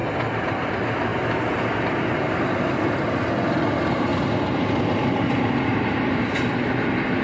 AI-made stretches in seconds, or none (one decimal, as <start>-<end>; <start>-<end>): none